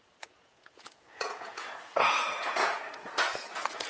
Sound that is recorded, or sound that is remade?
remade